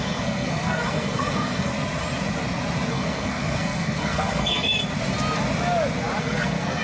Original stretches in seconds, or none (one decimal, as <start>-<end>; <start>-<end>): 1.7-2.9; 4.8-6.2